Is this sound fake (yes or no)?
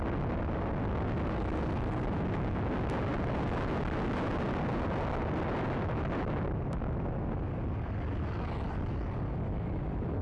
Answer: no